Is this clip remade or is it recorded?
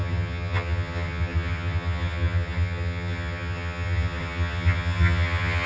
remade